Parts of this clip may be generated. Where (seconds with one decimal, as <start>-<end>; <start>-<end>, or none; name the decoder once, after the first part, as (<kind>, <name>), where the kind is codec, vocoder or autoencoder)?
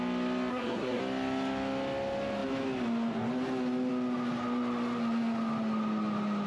0.5-1.0 (codec, SNAC)